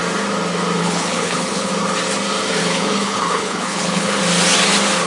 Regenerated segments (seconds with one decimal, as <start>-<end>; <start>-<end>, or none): 0.8-1.7; 2.6-4.2